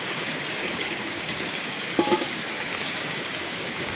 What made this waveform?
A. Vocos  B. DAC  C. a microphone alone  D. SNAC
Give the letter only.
B